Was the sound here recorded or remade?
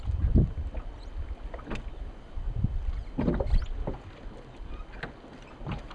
recorded